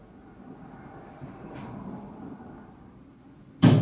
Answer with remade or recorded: recorded